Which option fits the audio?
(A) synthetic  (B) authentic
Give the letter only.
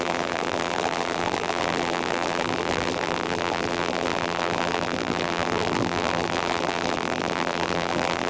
A